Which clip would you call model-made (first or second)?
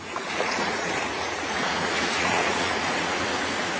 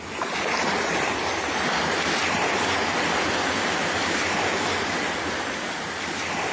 first